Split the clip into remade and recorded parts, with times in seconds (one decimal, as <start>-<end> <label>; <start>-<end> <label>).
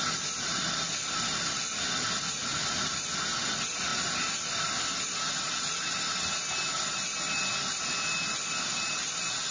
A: 0.0-9.5 recorded